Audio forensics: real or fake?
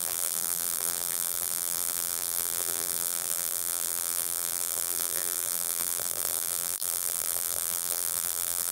fake